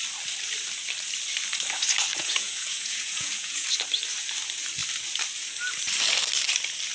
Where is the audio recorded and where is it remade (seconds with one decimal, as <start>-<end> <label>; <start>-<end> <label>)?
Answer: 0.0-2.1 recorded; 2.1-3.7 remade; 3.7-6.9 recorded